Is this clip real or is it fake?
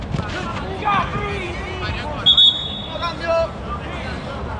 real